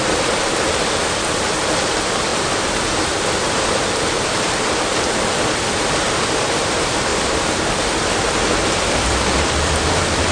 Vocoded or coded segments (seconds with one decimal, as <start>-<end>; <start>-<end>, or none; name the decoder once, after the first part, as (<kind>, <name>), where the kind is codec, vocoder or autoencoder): none